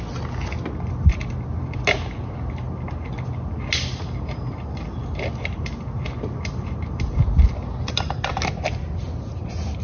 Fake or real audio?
real